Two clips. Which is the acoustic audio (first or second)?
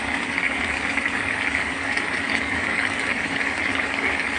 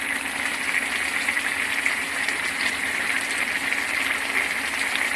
second